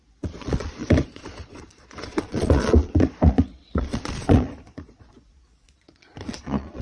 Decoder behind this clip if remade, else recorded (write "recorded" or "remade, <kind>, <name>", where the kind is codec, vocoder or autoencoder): remade, vocoder, Vocos